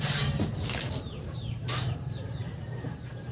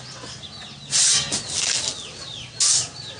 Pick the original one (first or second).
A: second